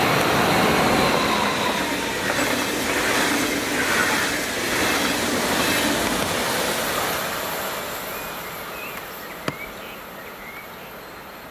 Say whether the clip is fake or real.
real